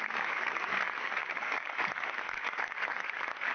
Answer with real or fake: fake